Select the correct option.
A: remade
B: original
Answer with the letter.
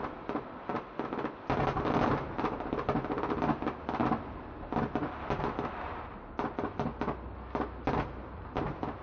B